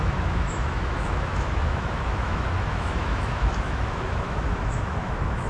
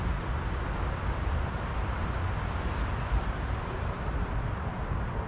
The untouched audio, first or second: second